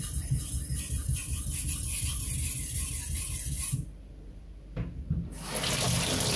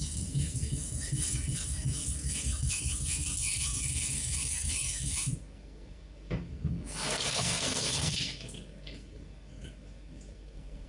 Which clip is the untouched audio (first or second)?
first